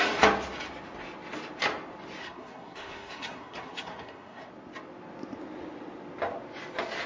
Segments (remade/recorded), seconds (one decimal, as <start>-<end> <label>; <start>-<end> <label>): 0.0-2.2 recorded; 2.2-4.5 remade; 4.5-7.1 recorded